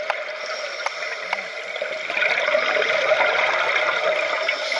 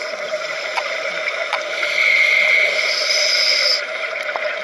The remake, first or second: second